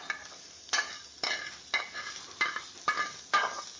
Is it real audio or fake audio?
real